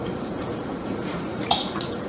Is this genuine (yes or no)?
no